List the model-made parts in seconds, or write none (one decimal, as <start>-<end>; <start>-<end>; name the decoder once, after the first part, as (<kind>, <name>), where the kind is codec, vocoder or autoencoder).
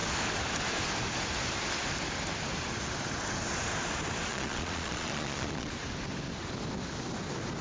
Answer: 4.3-5.7 (vocoder, Vocos)